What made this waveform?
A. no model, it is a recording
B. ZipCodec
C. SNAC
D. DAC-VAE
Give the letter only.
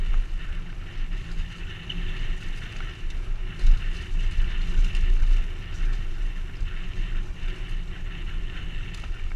A